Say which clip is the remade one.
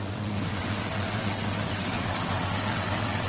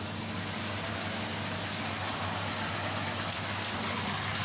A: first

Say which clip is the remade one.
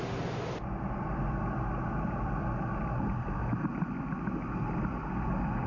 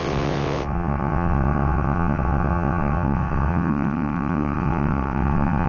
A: second